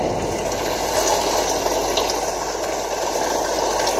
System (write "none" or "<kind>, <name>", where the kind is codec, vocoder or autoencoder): none